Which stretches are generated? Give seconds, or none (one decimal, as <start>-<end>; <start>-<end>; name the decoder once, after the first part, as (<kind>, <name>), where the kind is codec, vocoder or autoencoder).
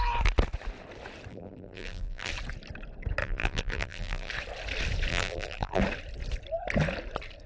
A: 1.3-2.3 (vocoder, BigVGAN v2); 3.2-4.3; 5.1-5.8